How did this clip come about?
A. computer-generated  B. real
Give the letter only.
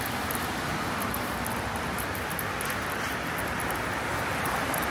B